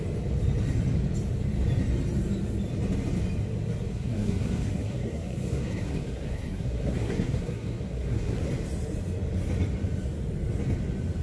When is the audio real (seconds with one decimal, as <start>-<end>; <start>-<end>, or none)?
0.0-3.9; 8.5-11.2